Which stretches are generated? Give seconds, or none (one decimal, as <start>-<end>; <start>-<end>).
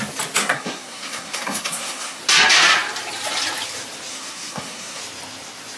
0.4-2.2; 4.1-5.0